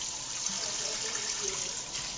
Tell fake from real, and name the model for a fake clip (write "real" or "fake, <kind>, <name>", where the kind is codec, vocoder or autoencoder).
real